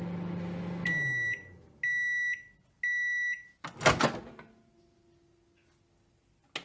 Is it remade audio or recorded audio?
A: recorded